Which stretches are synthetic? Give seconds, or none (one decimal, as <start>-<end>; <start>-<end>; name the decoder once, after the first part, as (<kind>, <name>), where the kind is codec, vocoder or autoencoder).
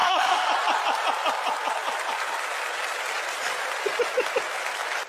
0.0-0.5 (autoencoder, DAC-VAE)